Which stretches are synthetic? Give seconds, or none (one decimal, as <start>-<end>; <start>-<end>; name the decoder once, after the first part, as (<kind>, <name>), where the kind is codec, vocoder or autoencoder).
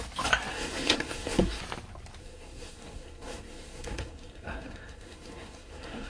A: 0.5-1.6 (codec, SNAC); 2.2-6.1